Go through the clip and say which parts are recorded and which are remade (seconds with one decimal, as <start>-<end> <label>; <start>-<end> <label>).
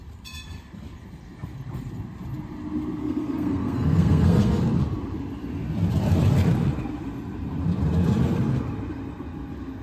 0.0-3.0 recorded; 3.0-4.6 remade; 4.6-9.8 recorded